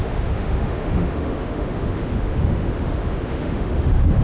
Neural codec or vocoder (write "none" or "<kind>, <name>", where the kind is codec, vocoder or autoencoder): autoencoder, DAC-VAE